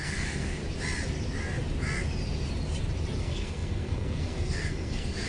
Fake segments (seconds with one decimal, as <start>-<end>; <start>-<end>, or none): 0.0-0.6; 3.2-5.3